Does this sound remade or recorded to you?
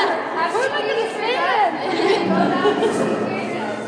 recorded